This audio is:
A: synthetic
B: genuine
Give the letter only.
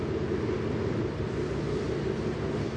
B